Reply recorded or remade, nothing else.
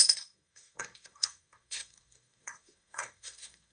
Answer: remade